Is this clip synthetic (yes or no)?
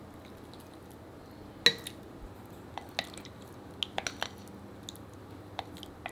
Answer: no